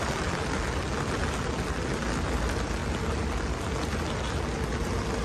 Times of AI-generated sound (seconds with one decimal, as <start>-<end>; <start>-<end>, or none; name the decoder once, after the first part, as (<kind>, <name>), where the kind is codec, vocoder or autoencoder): none